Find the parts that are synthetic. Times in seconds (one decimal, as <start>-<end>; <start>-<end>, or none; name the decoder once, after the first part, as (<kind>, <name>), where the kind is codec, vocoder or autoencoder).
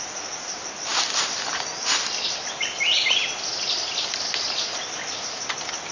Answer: none